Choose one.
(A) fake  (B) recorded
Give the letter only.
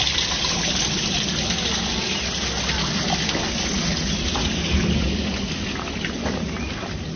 B